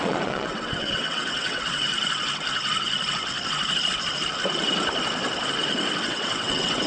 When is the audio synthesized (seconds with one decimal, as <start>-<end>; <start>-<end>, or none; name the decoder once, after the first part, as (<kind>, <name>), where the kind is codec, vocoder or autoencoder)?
0.0-1.9 (vocoder, WaveNeXt); 6.0-6.9